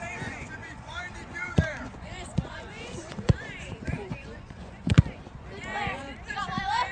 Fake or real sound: fake